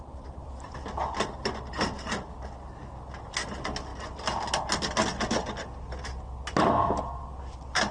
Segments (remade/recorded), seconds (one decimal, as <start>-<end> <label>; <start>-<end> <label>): 0.0-7.9 recorded